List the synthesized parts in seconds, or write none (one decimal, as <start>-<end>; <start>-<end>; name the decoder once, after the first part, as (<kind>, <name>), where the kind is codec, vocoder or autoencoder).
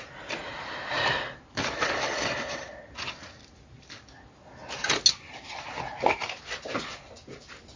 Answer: 0.4-2.7 (vocoder, BigVGAN v2)